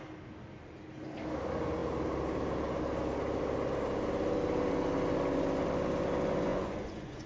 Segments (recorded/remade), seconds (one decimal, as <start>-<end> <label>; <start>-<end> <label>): 0.0-6.5 recorded; 6.5-7.3 remade